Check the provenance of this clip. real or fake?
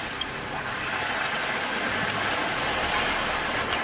real